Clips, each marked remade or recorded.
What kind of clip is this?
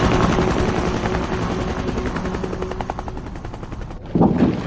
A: recorded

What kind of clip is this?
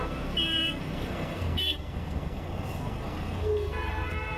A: remade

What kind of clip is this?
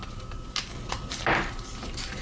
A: recorded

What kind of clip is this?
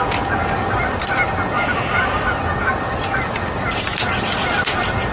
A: recorded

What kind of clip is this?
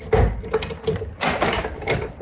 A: recorded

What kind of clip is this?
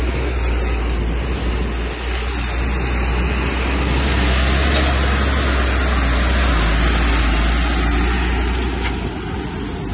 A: recorded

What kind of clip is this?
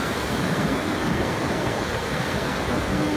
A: remade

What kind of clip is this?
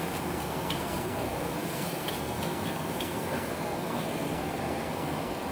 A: remade